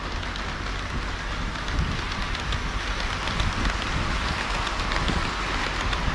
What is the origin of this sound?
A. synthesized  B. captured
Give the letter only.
B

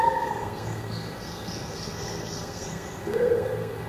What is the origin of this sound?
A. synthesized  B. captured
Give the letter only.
A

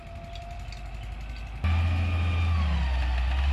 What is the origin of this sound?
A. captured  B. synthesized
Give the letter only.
A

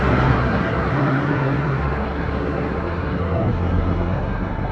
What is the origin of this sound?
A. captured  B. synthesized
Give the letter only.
B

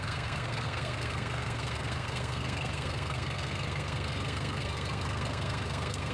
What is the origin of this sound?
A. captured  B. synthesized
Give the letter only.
B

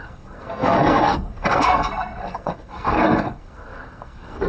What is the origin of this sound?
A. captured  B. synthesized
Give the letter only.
B